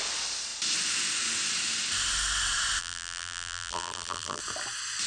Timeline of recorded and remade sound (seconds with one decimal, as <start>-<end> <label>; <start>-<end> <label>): 0.0-2.8 recorded; 2.8-4.4 remade; 4.4-5.1 recorded